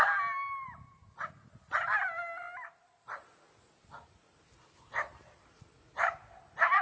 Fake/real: real